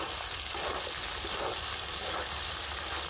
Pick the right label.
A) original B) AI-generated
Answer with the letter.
B